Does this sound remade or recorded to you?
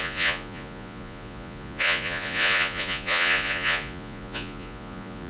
remade